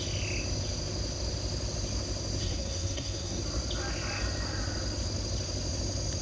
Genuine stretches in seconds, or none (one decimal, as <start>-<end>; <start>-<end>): 0.0-2.4; 3.4-6.2